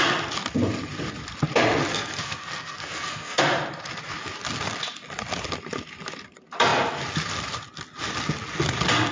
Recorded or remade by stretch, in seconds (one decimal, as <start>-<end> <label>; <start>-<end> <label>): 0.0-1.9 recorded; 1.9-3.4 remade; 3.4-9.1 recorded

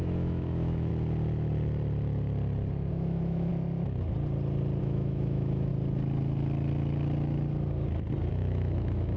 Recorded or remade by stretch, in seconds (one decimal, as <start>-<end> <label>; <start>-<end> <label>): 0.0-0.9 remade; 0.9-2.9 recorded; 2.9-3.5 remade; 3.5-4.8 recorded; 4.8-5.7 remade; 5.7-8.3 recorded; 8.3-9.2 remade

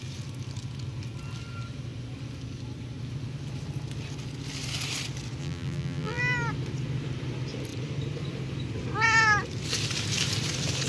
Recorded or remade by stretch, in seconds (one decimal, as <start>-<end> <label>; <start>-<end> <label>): 0.0-5.4 recorded; 5.4-6.2 remade; 6.2-10.9 recorded

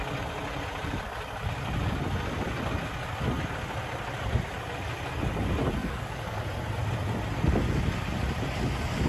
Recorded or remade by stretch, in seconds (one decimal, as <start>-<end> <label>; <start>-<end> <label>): 0.0-5.8 recorded; 5.8-6.4 remade; 6.4-9.1 recorded

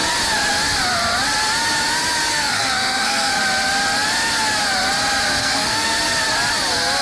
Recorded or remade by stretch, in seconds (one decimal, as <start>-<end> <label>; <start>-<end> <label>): 0.0-2.3 recorded; 2.3-3.4 remade; 3.4-5.4 recorded; 5.4-5.9 remade; 5.9-7.0 recorded

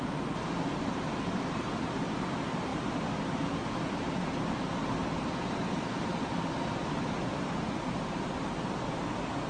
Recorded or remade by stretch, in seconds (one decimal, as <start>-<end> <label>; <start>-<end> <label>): 0.0-9.5 recorded

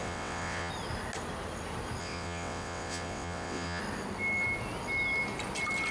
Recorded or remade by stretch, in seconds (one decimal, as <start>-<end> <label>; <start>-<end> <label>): 0.0-0.7 remade; 0.7-2.0 recorded; 2.0-3.8 remade; 3.8-5.9 recorded

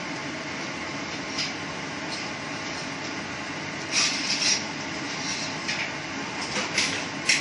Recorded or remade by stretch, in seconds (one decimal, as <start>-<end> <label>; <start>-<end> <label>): 0.0-7.4 recorded